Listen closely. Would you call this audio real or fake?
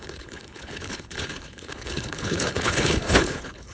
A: fake